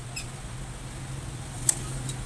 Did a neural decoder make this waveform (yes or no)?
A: no